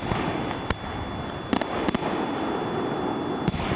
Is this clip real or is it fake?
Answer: real